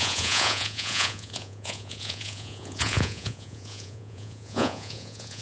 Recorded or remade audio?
remade